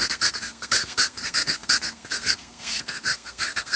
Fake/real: fake